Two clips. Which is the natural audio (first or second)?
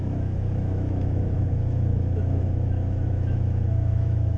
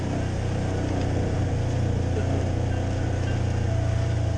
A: second